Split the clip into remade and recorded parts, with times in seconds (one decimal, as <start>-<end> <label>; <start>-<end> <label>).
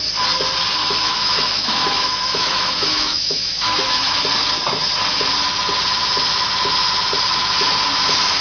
0.0-0.8 recorded; 0.8-4.2 remade; 4.2-8.4 recorded